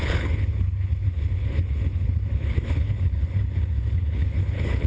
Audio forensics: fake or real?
fake